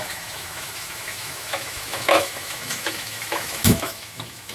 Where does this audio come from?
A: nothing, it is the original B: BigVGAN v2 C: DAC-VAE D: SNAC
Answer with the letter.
C